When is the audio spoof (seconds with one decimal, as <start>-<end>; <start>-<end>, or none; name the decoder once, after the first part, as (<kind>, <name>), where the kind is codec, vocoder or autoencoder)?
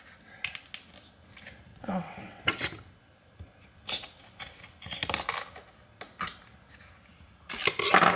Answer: 1.7-2.4 (vocoder, WaveNeXt)